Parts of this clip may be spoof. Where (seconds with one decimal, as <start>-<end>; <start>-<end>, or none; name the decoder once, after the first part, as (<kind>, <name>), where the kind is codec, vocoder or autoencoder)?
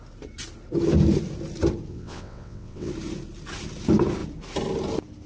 1.9-2.9 (vocoder, WaveNeXt)